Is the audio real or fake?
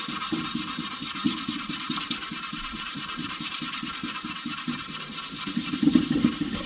fake